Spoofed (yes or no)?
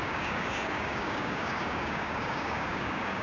yes